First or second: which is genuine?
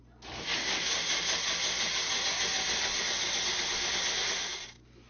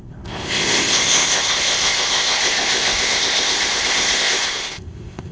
first